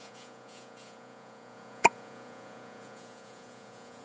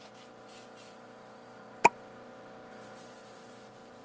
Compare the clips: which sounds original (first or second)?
second